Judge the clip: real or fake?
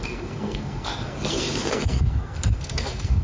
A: fake